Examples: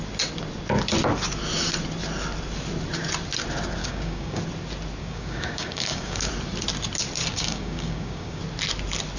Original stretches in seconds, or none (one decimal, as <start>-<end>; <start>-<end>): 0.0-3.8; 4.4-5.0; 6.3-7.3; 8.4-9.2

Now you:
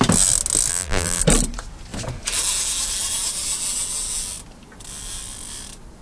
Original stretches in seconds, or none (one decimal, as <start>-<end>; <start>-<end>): 0.0-0.7; 1.2-6.0

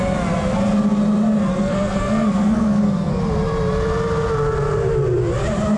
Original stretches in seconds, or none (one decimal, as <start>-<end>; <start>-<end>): 0.0-1.5; 3.2-5.8